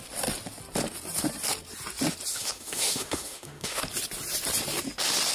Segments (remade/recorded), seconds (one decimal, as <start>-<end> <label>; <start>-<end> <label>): 0.0-2.3 recorded; 2.3-3.8 remade; 3.8-5.3 recorded